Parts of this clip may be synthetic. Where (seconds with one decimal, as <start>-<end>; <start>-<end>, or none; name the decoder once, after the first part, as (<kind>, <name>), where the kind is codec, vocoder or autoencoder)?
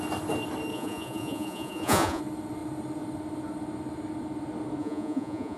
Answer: 0.7-2.2 (vocoder, Vocos); 4.8-5.6